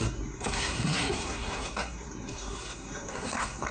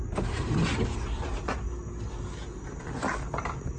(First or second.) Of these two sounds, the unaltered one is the second